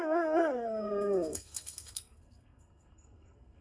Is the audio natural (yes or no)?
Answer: no